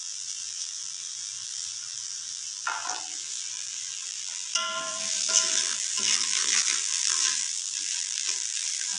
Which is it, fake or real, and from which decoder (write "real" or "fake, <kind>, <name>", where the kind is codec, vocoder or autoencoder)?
fake, vocoder, BigVGAN v2